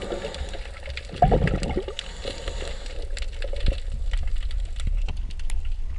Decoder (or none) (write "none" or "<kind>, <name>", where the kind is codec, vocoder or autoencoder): none